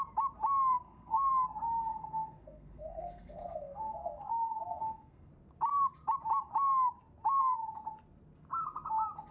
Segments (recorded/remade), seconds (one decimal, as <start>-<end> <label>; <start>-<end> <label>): 0.0-0.7 recorded; 0.7-1.3 remade; 1.3-1.9 recorded; 1.9-5.3 remade; 5.3-9.3 recorded